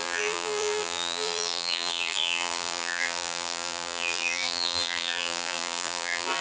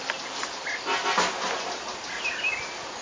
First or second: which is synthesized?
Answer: first